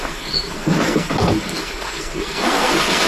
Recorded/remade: remade